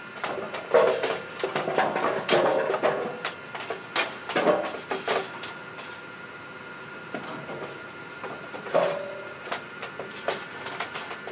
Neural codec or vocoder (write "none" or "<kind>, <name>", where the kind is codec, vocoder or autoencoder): none